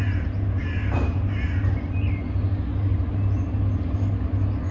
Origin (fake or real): real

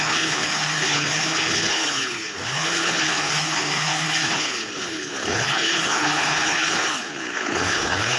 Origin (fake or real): fake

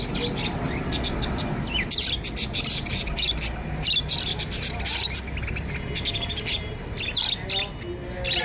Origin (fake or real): real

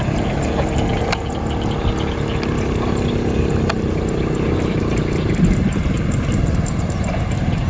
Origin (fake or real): real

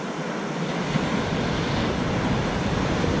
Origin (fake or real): real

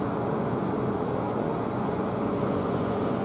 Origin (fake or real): fake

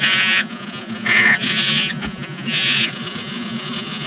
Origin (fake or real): fake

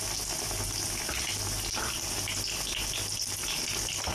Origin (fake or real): real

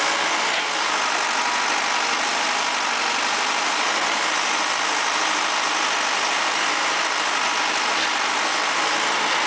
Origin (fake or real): real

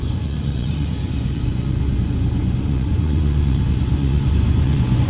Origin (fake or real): fake